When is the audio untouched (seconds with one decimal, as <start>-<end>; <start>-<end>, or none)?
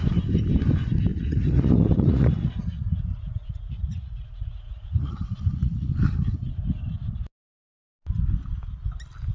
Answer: 0.0-1.1; 5.9-9.3